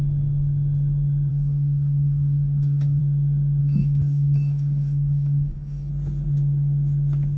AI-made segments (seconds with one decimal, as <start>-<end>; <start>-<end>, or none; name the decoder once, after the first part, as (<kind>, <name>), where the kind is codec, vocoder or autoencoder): 1.3-3.0 (codec, DAC); 3.6-5.9